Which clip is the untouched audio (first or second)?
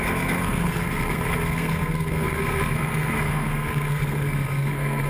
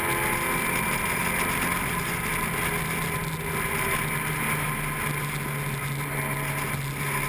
second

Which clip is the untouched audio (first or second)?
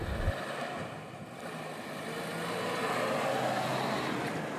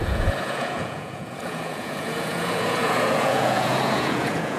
first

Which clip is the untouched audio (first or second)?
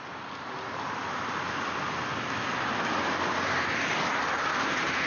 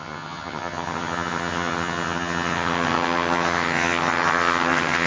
first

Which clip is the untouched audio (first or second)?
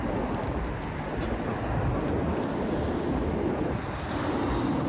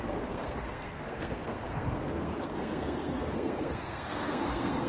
first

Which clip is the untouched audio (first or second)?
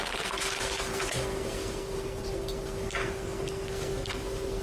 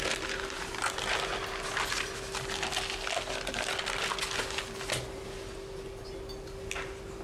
second